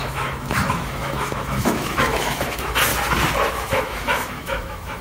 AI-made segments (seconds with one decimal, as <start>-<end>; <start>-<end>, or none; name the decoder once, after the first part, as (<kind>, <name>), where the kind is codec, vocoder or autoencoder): 0.0-2.9 (autoencoder, DAC-VAE); 3.5-5.0